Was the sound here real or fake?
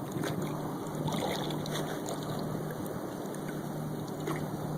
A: real